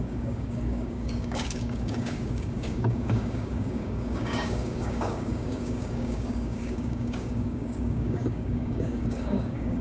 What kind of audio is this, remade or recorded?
remade